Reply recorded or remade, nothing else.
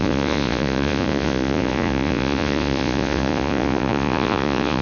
remade